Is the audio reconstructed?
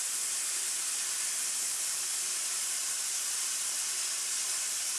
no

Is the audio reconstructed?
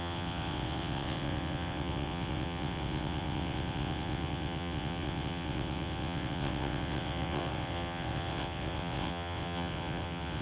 yes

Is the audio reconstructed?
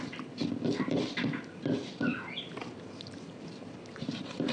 yes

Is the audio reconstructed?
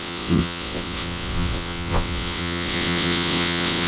yes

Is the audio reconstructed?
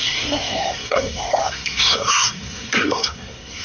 yes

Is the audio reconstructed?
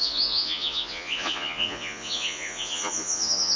yes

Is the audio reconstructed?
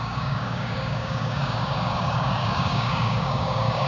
yes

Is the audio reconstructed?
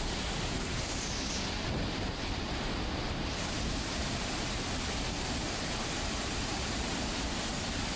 no